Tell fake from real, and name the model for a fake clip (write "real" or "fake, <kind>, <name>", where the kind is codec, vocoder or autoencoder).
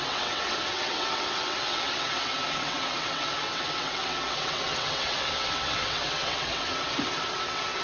fake, vocoder, WaveNeXt